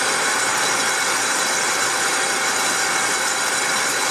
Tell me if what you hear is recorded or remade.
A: remade